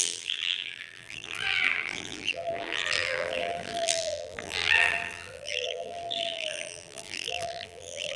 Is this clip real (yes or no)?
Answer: no